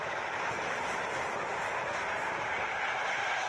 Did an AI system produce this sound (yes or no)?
no